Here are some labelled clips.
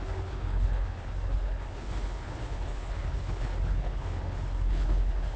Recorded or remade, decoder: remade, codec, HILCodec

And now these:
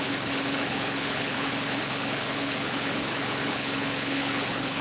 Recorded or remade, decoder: remade, codec, HILCodec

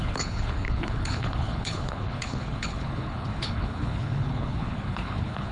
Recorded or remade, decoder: remade, codec, HILCodec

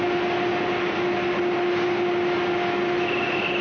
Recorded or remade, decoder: recorded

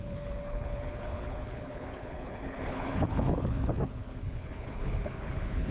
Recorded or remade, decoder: remade, codec, HILCodec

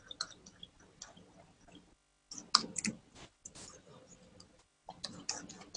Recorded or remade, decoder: recorded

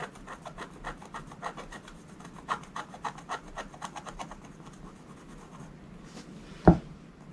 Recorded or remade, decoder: recorded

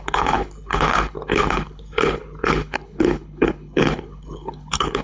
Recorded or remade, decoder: remade, codec, HILCodec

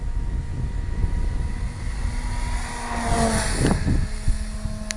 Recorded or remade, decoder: recorded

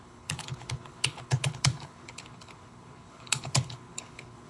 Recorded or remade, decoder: remade, codec, HILCodec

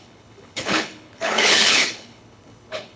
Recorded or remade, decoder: remade, codec, HILCodec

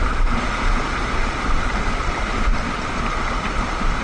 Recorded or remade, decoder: recorded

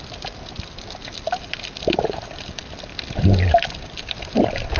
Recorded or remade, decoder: recorded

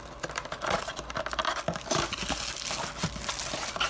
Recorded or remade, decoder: recorded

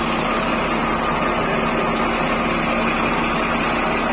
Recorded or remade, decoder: recorded